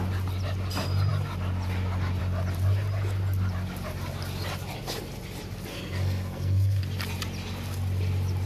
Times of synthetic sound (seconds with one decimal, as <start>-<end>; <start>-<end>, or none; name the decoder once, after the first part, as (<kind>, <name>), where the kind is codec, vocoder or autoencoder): 5.7-6.8 (codec, SNAC)